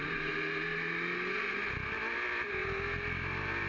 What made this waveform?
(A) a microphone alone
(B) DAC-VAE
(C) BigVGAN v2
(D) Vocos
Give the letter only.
A